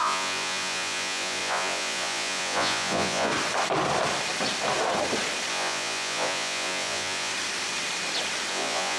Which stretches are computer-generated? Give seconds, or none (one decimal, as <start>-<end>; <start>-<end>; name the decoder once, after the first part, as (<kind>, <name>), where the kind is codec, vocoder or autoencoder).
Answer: 0.0-3.3 (vocoder, Vocos); 5.5-7.3; 8.5-9.0